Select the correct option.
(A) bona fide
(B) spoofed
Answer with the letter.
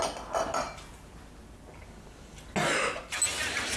A